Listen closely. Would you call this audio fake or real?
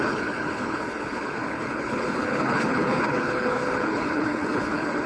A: fake